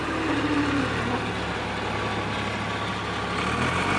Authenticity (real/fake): real